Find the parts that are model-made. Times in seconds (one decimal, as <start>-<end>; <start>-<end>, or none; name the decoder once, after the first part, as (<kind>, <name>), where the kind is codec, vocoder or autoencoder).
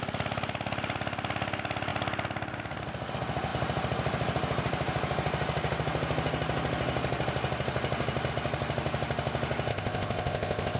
9.7-10.8 (codec, ZipCodec)